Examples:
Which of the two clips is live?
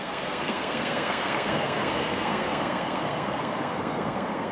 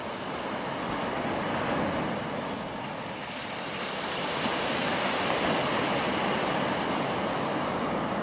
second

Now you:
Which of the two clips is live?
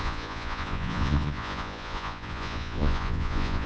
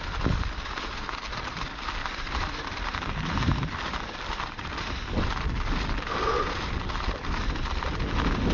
second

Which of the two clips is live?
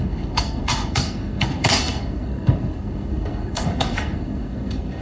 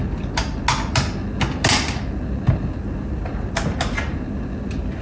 second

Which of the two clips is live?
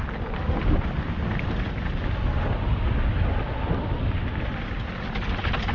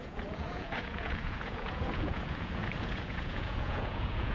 first